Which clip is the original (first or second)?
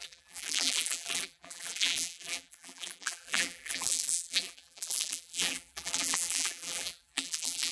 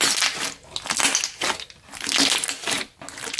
second